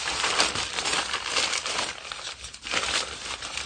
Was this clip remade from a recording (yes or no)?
yes